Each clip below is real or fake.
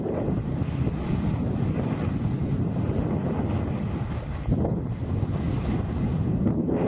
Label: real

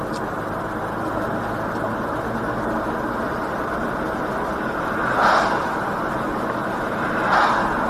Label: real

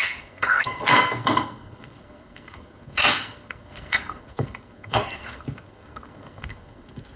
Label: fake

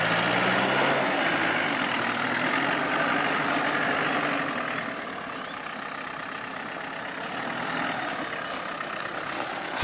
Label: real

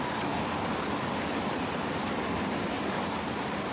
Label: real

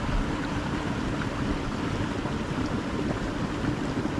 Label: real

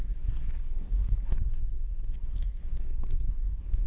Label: fake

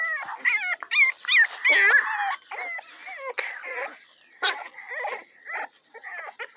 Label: real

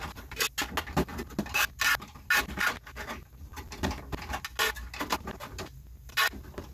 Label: real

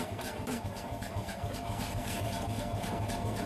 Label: fake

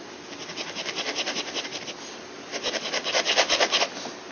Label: real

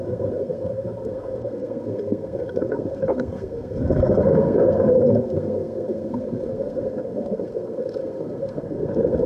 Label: fake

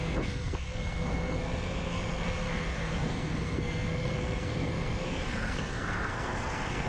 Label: fake